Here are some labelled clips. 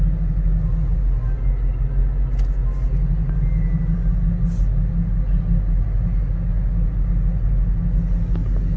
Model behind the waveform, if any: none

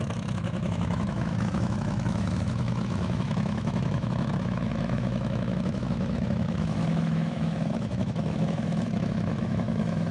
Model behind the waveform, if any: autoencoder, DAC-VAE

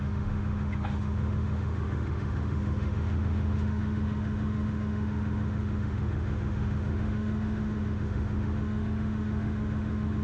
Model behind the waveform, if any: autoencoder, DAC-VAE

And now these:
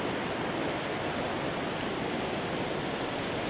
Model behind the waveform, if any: none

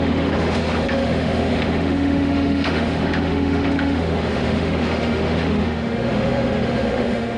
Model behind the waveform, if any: autoencoder, DAC-VAE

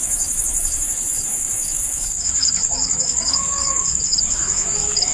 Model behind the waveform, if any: autoencoder, DAC-VAE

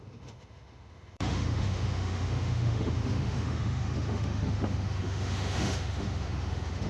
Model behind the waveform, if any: autoencoder, DAC-VAE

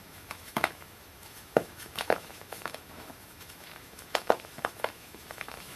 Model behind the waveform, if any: autoencoder, DAC-VAE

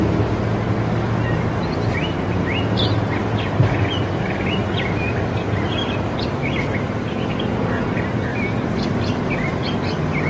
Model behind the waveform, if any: none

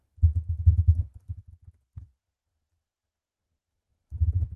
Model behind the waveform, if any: none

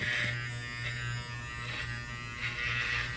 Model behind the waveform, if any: none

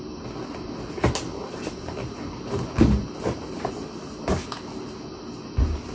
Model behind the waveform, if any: none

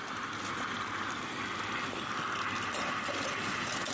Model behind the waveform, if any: none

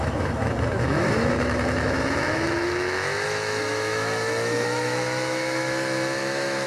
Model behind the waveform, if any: autoencoder, DAC-VAE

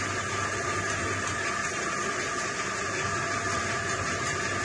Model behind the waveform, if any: none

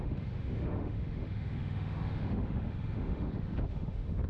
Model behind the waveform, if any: autoencoder, DAC-VAE